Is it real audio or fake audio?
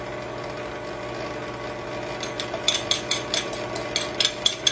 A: real